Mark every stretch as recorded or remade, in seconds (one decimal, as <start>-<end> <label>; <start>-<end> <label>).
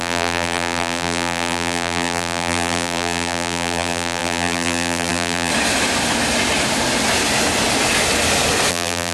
0.0-5.5 remade; 5.5-8.7 recorded; 8.7-9.1 remade